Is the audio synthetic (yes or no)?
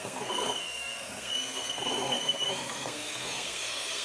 yes